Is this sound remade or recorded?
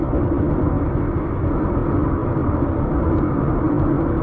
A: recorded